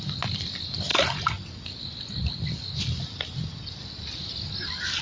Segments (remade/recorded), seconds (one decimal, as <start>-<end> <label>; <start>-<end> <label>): 0.0-5.0 recorded